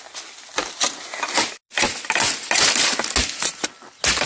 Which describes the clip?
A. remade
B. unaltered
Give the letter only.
B